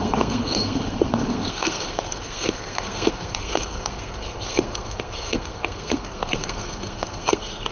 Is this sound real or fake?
fake